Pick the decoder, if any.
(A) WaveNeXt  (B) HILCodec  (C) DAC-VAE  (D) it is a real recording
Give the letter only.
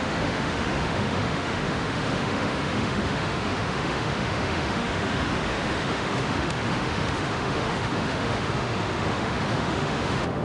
C